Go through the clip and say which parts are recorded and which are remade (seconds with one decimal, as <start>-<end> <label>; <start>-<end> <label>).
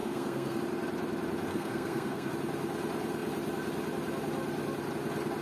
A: 0.0-0.6 remade; 0.6-1.5 recorded; 1.5-2.3 remade; 2.3-5.4 recorded